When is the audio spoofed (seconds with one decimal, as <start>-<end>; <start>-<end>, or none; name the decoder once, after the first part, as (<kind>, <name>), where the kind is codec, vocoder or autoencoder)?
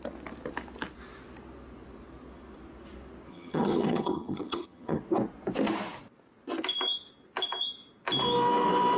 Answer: 3.3-5.0 (vocoder, HiFi-GAN)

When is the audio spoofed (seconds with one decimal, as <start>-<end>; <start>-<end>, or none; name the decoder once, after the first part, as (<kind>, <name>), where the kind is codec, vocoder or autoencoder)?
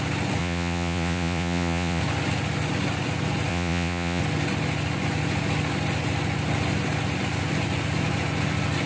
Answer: 0.4-2.0 (vocoder, Vocos); 3.5-4.2